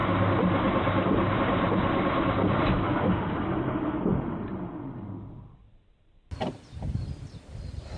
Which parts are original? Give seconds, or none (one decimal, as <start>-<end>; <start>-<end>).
2.6-8.0